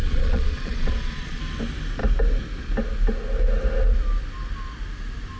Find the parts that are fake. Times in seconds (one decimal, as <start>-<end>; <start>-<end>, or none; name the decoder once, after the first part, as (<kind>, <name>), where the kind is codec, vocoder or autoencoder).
0.0-1.4 (vocoder, Vocos)